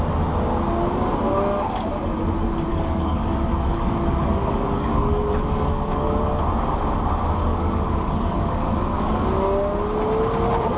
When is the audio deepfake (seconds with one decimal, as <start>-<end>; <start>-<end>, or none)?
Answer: 2.7-6.2; 7.5-9.3